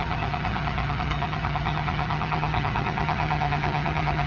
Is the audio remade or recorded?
remade